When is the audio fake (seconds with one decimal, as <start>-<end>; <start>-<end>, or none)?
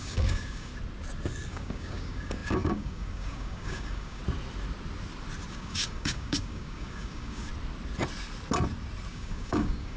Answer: 0.0-0.7; 1.5-4.2; 5.5-7.5; 9.1-10.0